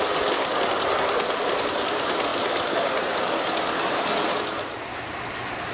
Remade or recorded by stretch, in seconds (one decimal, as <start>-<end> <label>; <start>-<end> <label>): 0.0-5.7 recorded